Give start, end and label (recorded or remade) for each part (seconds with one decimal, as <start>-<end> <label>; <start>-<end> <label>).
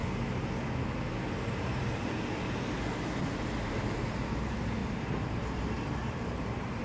0.0-4.8 recorded; 4.8-6.8 remade